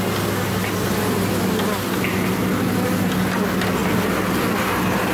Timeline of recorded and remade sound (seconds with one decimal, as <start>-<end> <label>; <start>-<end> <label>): 0.0-5.1 recorded